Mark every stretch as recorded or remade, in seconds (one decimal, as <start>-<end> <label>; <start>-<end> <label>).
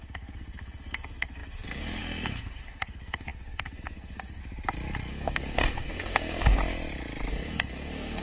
0.0-4.4 remade; 4.4-5.1 recorded; 5.1-6.6 remade; 6.6-7.3 recorded; 7.3-8.2 remade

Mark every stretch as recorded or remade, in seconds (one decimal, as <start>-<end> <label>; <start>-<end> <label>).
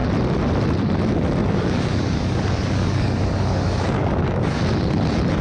0.0-1.4 recorded; 1.4-4.6 remade; 4.6-5.4 recorded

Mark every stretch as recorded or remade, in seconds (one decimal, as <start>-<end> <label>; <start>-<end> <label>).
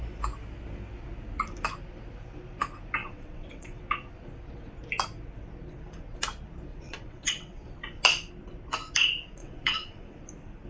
0.0-3.0 recorded; 3.0-3.8 remade; 3.8-6.7 recorded; 6.7-7.7 remade; 7.7-9.4 recorded; 9.4-10.2 remade; 10.2-10.7 recorded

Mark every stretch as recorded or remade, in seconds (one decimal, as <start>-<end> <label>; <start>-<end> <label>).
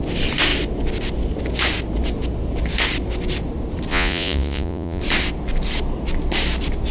0.0-3.9 recorded; 3.9-5.0 remade; 5.0-6.9 recorded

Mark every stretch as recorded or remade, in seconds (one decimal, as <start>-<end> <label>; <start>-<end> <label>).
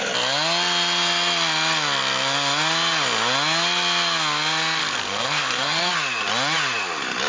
0.0-4.8 recorded; 4.8-5.9 remade; 5.9-7.3 recorded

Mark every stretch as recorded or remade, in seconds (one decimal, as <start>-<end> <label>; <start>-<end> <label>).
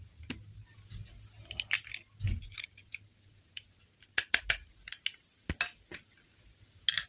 0.0-7.1 recorded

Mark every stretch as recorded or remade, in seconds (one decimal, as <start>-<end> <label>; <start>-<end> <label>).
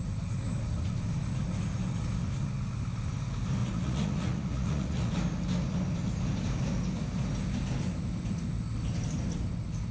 0.0-3.6 recorded; 3.6-5.1 remade; 5.1-9.9 recorded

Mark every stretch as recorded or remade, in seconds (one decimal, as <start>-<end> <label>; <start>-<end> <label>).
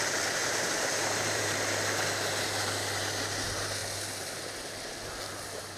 0.0-0.4 recorded; 0.4-1.6 remade; 1.6-5.8 recorded